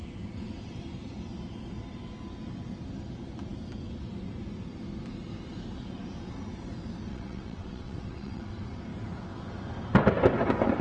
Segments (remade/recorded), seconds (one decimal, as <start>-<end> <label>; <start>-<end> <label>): 0.0-7.1 recorded; 7.1-8.5 remade; 8.5-10.8 recorded